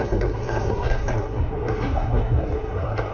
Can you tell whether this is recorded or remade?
remade